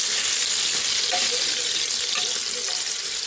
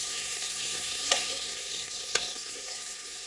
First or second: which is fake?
second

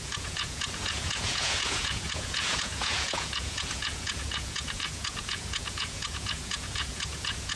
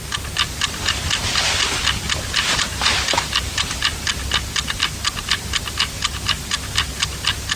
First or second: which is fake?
first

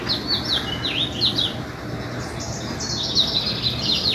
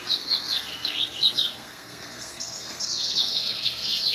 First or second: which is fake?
second